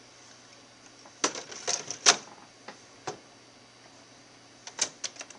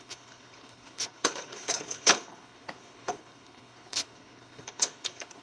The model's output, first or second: second